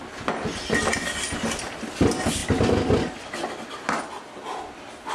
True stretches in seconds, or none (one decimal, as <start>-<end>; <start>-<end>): 0.0-5.1